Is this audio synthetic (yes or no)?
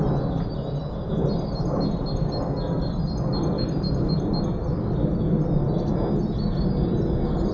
no